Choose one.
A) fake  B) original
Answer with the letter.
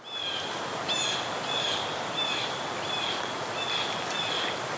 B